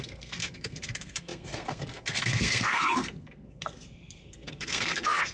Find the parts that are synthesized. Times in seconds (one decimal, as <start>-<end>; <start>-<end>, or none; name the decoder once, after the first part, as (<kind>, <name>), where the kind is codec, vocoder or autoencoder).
0.0-5.3 (codec, SNAC)